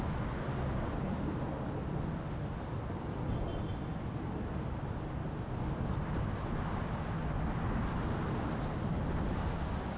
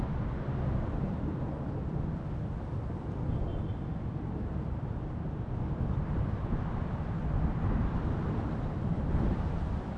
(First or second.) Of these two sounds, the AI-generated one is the second